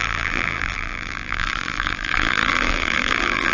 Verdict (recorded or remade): remade